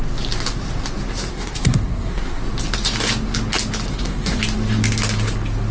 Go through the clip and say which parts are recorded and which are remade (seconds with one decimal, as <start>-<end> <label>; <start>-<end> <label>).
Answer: 0.0-1.3 recorded; 1.3-2.4 remade; 2.4-3.9 recorded; 3.9-4.4 remade; 4.4-5.7 recorded